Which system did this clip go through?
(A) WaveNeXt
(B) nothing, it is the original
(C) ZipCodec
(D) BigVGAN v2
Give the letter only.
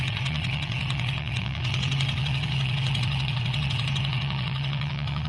A